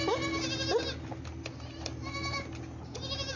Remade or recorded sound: recorded